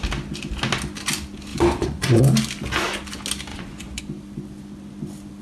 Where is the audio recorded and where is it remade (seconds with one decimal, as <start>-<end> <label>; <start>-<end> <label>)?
0.0-1.5 recorded; 1.5-2.2 remade; 2.2-3.5 recorded; 3.5-4.0 remade; 4.0-5.4 recorded